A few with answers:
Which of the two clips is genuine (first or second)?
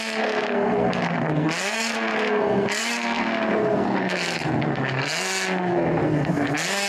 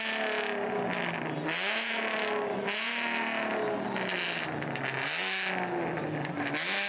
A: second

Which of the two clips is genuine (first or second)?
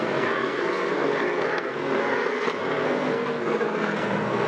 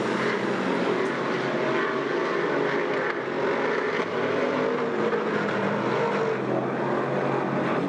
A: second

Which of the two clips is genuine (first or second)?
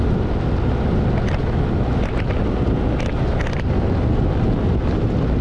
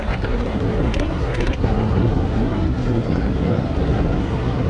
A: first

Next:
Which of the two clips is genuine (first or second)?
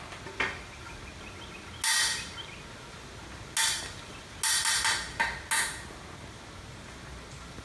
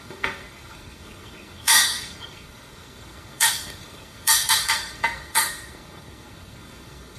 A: first